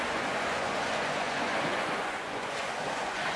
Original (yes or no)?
no